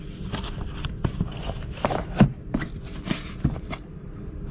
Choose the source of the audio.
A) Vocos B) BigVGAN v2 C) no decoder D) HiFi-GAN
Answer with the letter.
B